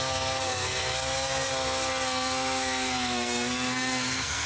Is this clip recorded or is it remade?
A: remade